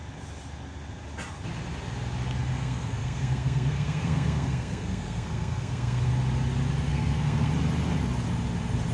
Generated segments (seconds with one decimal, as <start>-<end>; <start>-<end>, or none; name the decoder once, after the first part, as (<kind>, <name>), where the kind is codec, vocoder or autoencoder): 2.5-6.1 (codec, SNAC); 6.9-7.5